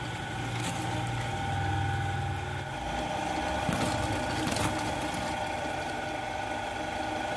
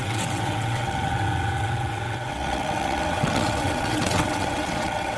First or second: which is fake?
second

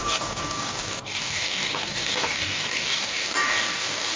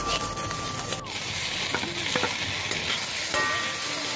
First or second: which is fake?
first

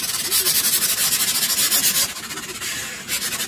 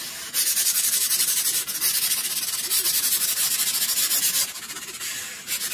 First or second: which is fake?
second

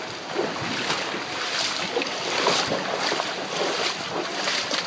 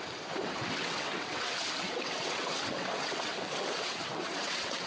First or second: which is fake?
second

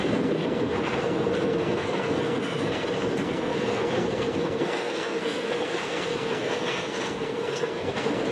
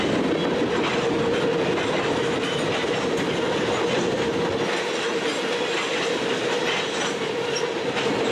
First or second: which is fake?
first